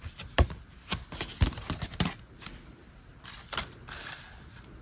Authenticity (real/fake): real